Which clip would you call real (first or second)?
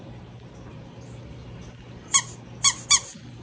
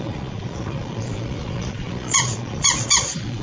first